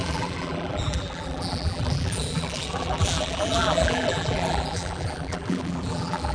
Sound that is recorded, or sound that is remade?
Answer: remade